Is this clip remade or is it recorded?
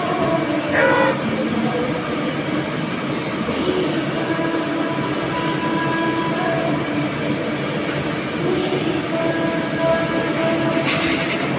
recorded